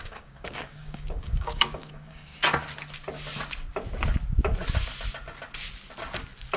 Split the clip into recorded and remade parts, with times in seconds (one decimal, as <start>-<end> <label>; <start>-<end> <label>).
0.0-2.3 remade; 2.3-6.6 recorded